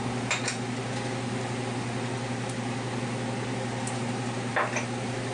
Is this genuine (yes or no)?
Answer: yes